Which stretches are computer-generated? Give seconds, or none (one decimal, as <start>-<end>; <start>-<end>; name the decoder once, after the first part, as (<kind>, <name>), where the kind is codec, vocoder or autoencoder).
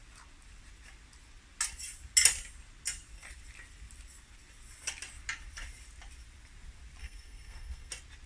7.0-7.9 (codec, SNAC)